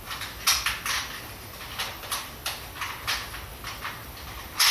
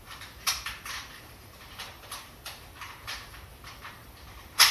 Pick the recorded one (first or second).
first